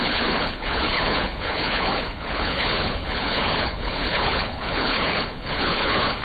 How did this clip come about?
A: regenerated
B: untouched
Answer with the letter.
A